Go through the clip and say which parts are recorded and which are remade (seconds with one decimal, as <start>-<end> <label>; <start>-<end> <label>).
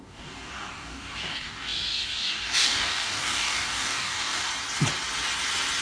0.0-4.5 remade; 4.5-5.8 recorded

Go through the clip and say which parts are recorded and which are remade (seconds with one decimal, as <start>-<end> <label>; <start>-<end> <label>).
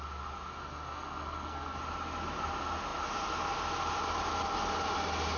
0.0-0.6 recorded; 0.6-1.8 remade; 1.8-5.4 recorded